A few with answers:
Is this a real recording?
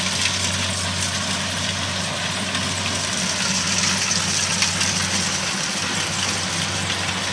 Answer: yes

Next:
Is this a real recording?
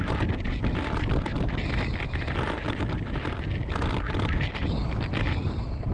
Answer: yes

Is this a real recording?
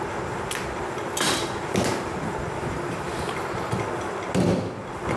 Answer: yes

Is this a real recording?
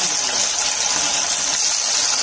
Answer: yes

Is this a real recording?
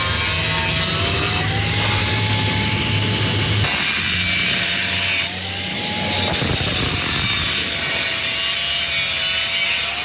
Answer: yes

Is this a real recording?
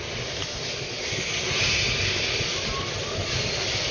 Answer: yes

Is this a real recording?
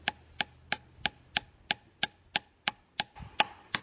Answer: yes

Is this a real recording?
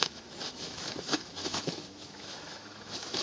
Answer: no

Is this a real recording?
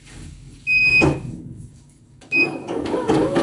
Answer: no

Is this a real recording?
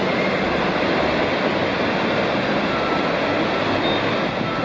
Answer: yes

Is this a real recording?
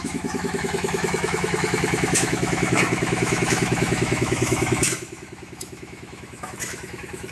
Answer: no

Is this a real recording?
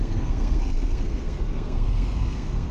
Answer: no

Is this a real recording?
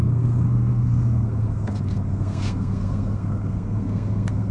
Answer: no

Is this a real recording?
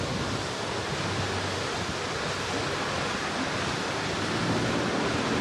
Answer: yes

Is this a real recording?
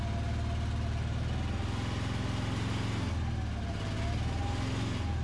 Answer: yes